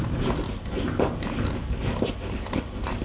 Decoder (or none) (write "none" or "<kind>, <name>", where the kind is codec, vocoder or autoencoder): none